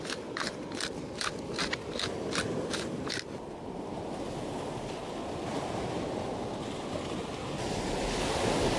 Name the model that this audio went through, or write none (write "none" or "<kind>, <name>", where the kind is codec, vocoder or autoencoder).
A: none